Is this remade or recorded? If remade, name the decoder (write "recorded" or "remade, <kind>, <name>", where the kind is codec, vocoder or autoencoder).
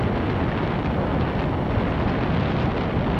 recorded